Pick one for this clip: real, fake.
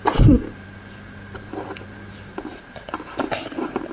fake